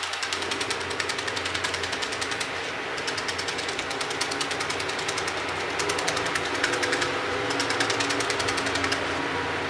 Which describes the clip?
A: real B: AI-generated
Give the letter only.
A